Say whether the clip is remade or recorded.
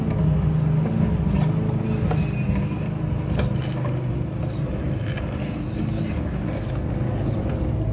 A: recorded